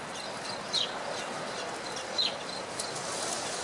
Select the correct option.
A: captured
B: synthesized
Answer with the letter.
A